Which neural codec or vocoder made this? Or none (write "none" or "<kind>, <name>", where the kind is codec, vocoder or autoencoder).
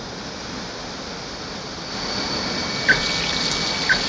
none